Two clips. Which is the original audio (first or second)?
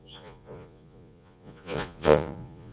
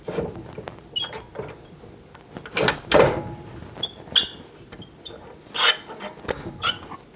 second